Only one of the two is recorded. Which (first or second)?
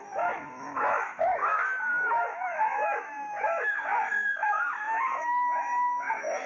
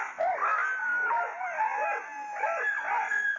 second